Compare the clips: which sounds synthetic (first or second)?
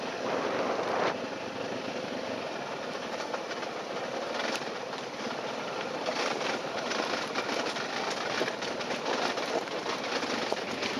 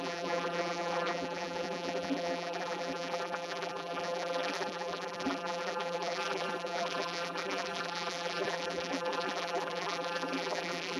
second